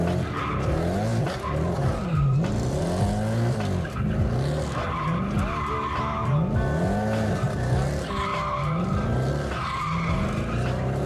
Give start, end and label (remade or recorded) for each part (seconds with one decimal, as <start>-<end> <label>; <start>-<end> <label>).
0.0-11.1 recorded